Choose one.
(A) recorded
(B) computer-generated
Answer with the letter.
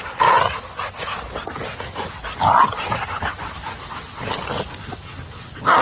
A